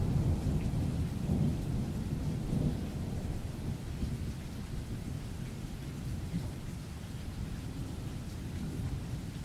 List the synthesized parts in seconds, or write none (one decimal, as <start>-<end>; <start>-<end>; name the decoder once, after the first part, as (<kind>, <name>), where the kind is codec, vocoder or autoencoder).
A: 0.0-3.4 (vocoder, BigVGAN v2); 6.2-9.4